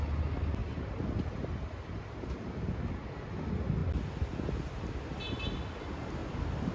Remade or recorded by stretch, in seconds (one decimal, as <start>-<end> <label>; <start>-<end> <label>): 0.0-0.6 recorded; 0.6-2.8 remade; 2.8-6.2 recorded; 6.2-6.7 remade